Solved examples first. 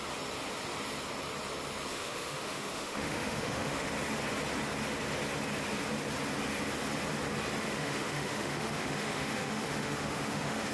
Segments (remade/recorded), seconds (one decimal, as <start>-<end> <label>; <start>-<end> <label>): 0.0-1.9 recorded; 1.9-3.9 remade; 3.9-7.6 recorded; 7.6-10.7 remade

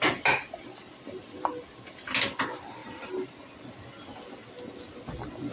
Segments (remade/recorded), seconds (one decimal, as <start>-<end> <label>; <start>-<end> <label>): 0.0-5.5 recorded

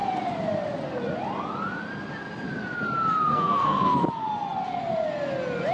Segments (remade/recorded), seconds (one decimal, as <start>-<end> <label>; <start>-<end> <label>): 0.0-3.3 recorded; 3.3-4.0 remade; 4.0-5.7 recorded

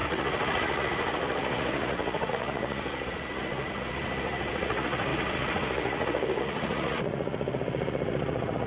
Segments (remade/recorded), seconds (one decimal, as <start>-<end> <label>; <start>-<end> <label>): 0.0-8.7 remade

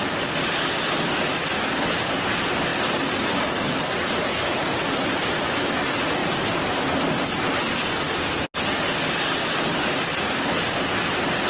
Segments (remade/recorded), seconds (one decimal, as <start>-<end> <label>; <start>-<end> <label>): 0.0-2.7 recorded; 2.7-5.5 remade; 5.5-6.2 recorded; 6.2-6.7 remade; 6.7-11.5 recorded

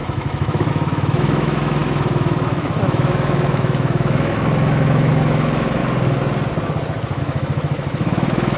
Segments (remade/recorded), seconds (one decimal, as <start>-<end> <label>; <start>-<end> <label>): 0.0-5.8 remade; 5.8-7.2 recorded; 7.2-8.6 remade

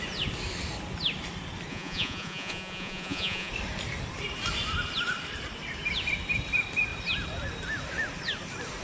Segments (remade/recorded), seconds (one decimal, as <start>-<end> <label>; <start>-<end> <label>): 0.0-1.7 recorded; 1.7-3.5 remade; 3.5-8.8 recorded

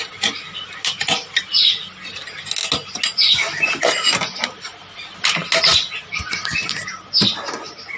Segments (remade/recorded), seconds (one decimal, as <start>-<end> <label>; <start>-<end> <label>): 0.0-8.0 recorded